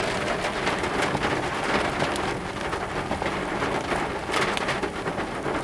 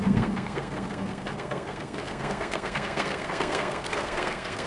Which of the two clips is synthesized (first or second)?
second